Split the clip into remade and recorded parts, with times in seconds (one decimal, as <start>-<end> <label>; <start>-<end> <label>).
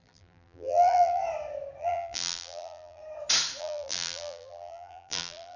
0.0-1.2 remade; 1.2-1.8 recorded; 1.8-3.0 remade; 3.0-3.6 recorded; 3.6-5.6 remade